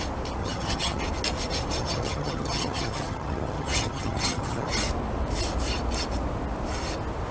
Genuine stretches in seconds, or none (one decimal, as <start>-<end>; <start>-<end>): 0.0-0.4; 1.0-1.8; 4.7-7.3